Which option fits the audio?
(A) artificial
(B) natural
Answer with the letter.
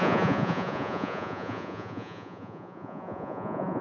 A